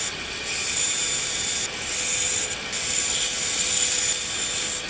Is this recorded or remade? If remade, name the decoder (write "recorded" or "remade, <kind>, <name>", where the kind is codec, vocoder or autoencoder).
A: recorded